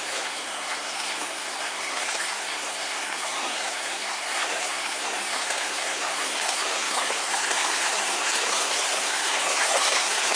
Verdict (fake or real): fake